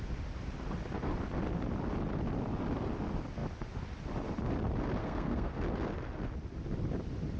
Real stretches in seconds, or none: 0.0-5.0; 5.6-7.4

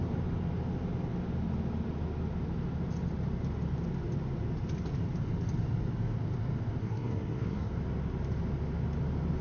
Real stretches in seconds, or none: 0.0-6.8; 7.7-9.4

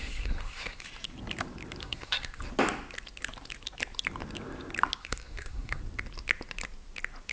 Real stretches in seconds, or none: 0.8-1.8; 2.4-5.0; 5.8-7.3

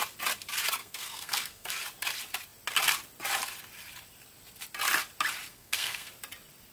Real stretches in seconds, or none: 0.0-0.8; 1.7-5.5; 6.1-6.7

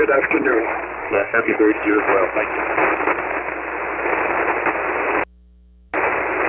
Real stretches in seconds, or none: 0.0-1.0; 1.6-6.5

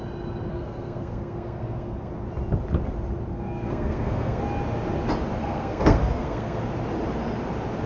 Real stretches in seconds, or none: 0.0-0.5; 2.1-3.3; 4.4-5.4; 6.6-7.9

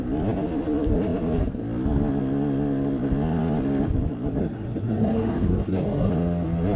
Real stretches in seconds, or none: 0.0-4.4; 6.1-6.8

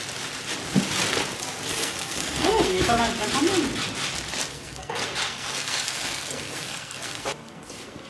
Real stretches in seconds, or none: 0.0-1.7; 3.1-4.5